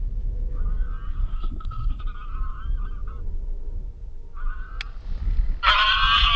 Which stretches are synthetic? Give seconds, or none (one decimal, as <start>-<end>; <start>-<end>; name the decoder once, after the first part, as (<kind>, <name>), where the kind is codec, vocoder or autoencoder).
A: 1.2-2.0 (codec, SNAC)